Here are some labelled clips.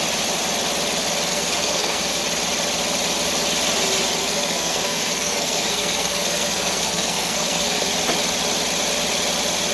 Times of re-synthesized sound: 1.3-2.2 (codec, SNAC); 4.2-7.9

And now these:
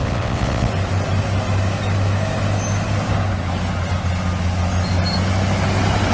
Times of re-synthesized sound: 0.0-0.7 (vocoder, WaveNeXt)